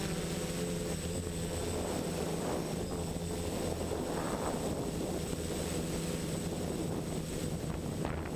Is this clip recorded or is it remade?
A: recorded